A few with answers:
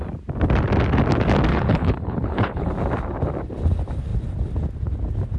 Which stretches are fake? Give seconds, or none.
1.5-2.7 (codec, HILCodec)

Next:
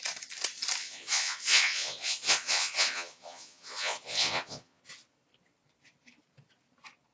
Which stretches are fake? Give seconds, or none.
0.8-4.8 (vocoder, Vocos)